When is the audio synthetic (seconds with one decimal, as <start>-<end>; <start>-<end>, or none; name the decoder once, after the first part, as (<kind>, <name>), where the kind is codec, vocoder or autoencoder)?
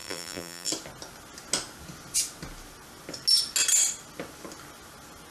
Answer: 0.0-0.7 (vocoder, BigVGAN v2)